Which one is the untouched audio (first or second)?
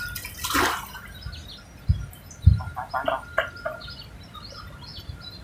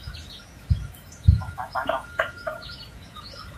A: first